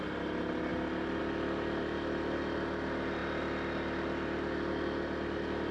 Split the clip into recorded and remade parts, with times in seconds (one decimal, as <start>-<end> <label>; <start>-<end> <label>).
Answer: 0.0-5.7 recorded